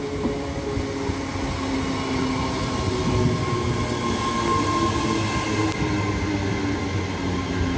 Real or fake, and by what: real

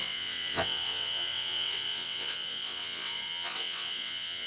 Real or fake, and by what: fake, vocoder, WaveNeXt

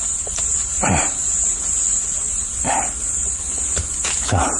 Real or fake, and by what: real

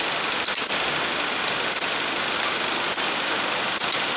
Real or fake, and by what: real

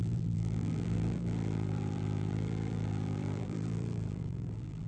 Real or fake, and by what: fake, vocoder, BigVGAN v2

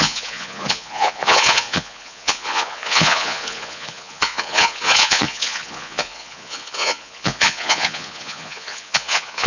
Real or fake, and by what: fake, vocoder, Vocos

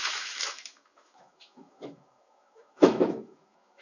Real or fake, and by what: fake, autoencoder, DAC-VAE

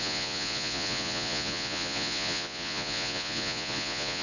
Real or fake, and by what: fake, vocoder, Vocos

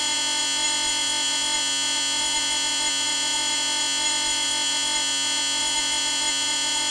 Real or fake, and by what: fake, vocoder, Vocos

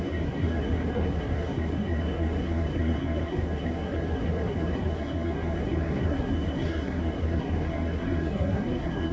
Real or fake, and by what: fake, codec, SNAC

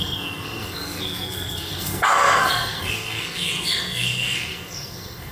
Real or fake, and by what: fake, codec, SNAC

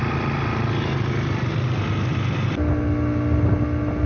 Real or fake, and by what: real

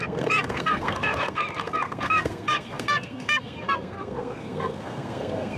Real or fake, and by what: fake, codec, SNAC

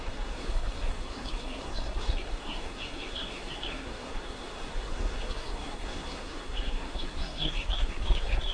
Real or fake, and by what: fake, codec, SNAC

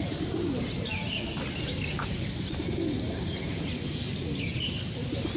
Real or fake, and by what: real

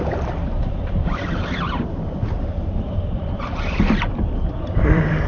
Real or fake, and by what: fake, vocoder, BigVGAN v2